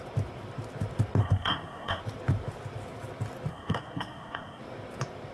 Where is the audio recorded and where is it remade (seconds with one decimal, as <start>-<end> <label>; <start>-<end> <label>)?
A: 0.0-1.2 recorded; 1.2-2.0 remade; 2.0-3.5 recorded; 3.5-4.6 remade; 4.6-5.3 recorded